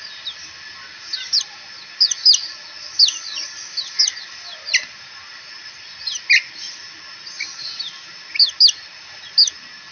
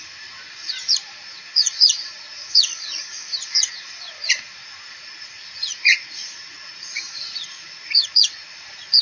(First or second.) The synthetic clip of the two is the second